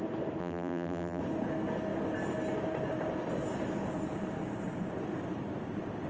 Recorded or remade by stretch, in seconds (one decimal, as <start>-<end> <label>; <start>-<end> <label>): 0.0-0.4 recorded; 0.4-1.2 remade; 1.2-6.1 recorded

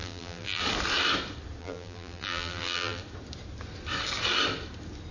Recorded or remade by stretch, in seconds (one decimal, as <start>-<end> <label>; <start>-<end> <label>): 0.0-0.6 remade; 0.6-1.6 recorded; 1.6-3.0 remade; 3.0-5.1 recorded